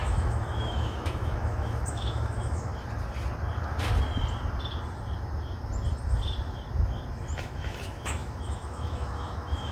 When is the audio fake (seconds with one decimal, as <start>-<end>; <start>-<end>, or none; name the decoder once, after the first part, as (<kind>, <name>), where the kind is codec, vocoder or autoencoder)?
0.0-2.7 (autoencoder, DAC-VAE); 7.4-9.7